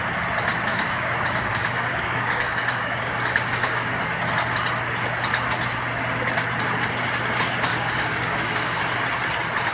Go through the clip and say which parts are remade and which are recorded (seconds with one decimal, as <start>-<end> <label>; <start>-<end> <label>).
0.0-0.7 recorded; 0.7-4.2 remade; 4.2-7.7 recorded; 7.7-8.8 remade; 8.8-9.7 recorded